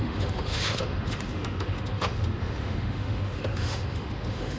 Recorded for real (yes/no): no